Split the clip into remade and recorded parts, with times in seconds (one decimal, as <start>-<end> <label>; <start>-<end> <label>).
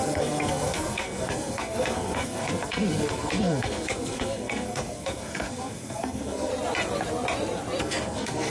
0.0-6.5 remade; 6.5-7.8 recorded; 7.8-8.5 remade